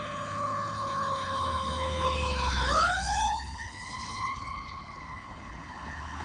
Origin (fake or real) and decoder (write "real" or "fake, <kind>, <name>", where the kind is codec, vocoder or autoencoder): fake, codec, HILCodec